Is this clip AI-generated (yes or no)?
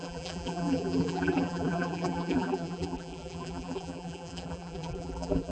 yes